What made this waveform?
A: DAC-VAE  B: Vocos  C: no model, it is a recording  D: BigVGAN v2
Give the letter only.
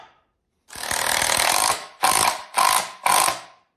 C